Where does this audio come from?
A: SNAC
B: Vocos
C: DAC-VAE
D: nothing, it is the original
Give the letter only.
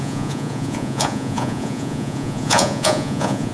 B